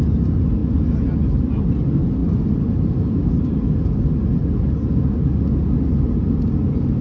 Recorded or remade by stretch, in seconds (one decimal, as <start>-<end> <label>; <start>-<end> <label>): 0.0-7.0 recorded